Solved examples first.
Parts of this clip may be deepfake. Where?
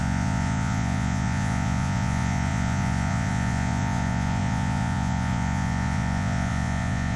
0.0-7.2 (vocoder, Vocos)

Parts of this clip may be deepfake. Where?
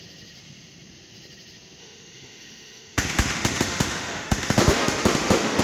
1.8-5.6 (autoencoder, DAC-VAE)